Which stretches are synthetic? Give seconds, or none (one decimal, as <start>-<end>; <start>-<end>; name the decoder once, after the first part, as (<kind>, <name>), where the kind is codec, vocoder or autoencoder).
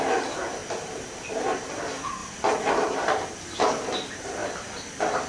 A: 0.0-2.2 (vocoder, BigVGAN v2); 2.7-5.3